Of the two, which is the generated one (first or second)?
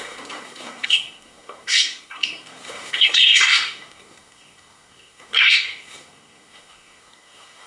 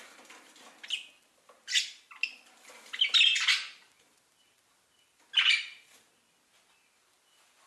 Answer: first